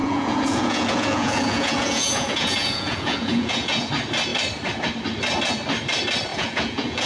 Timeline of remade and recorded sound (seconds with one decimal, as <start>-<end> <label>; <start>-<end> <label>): 0.0-3.9 remade; 3.9-6.3 recorded; 6.3-7.1 remade